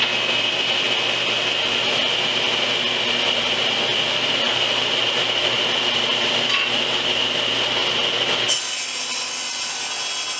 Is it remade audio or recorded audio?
recorded